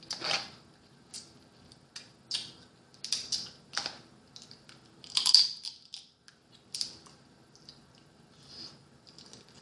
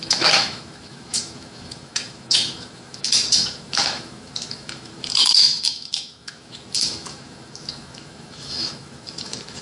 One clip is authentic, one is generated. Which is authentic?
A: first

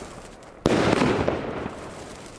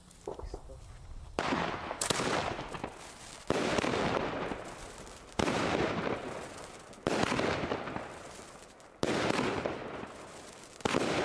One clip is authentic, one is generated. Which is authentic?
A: second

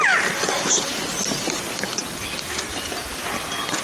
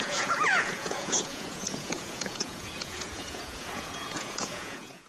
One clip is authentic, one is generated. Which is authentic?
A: first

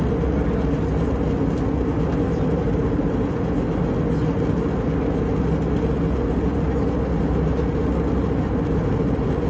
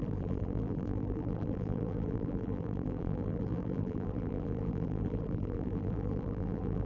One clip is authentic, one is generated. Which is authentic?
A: first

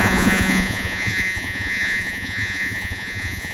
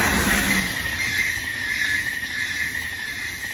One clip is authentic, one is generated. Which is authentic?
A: second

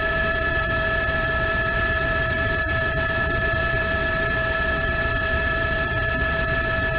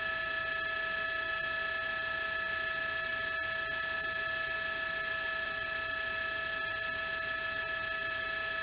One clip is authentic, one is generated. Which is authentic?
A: second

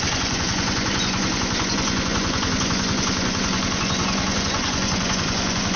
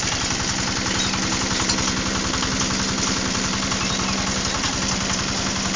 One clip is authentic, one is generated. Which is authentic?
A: second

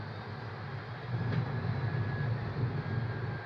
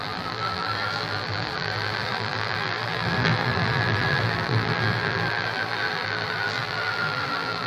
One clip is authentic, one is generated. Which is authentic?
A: first